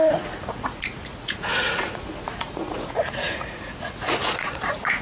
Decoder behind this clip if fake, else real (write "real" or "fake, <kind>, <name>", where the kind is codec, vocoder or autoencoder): fake, vocoder, Vocos